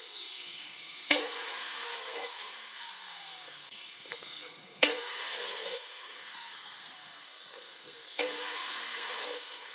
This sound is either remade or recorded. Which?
remade